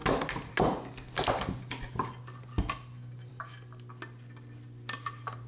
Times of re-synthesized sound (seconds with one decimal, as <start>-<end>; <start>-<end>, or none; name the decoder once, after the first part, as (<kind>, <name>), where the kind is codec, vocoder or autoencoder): none